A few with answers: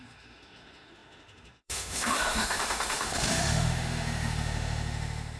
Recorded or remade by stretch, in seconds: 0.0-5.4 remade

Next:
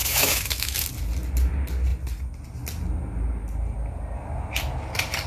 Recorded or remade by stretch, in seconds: 0.0-0.9 remade; 0.9-5.3 recorded

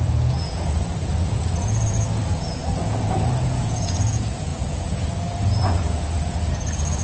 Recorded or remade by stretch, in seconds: 0.0-7.0 remade

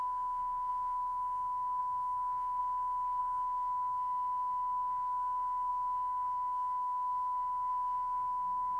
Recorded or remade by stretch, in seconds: 0.0-2.6 remade; 2.6-3.2 recorded; 3.2-8.8 remade